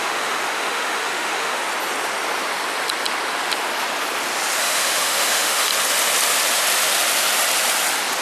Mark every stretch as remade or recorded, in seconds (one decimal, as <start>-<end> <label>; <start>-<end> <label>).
0.0-1.6 remade; 1.6-4.6 recorded; 4.6-5.7 remade; 5.7-8.2 recorded